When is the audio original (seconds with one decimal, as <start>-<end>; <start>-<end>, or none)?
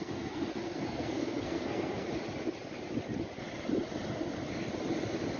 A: 2.1-5.4